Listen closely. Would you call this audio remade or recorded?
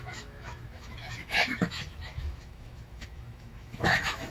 remade